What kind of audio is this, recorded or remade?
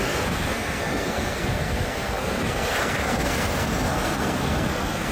remade